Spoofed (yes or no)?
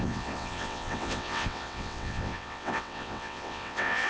yes